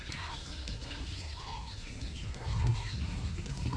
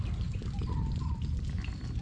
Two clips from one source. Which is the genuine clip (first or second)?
second